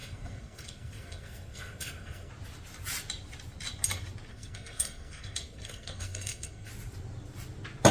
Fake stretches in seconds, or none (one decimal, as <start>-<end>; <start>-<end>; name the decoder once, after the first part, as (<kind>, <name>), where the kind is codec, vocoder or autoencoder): 0.0-2.3 (codec, SNAC); 4.3-6.7